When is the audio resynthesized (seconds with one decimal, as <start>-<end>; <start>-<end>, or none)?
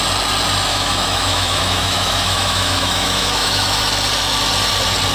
0.7-3.8